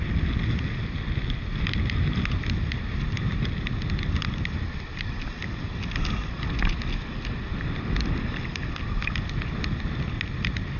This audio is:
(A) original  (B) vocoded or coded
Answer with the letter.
A